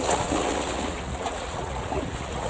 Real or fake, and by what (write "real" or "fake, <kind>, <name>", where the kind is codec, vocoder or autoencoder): fake, vocoder, Vocos